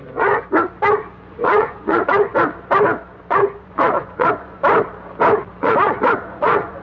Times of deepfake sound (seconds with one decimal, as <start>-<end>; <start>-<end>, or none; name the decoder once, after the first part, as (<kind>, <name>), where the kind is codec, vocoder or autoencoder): 0.0-0.4 (vocoder, Vocos); 1.3-2.3; 3.0-4.6; 5.6-6.8